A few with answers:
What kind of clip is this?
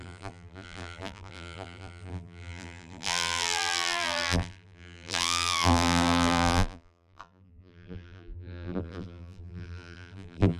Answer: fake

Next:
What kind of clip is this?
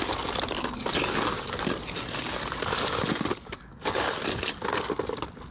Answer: real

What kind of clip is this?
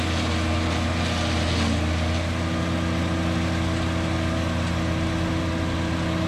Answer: real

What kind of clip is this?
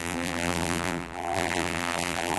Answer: fake